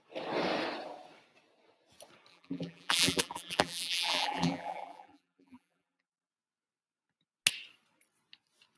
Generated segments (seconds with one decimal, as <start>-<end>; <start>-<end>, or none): 2.3-6.3